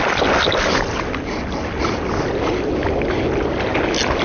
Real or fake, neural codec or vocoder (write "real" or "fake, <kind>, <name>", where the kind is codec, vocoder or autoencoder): real